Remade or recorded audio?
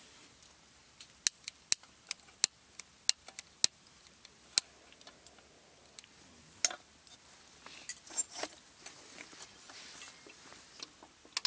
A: recorded